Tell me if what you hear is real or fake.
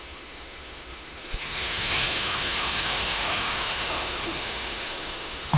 fake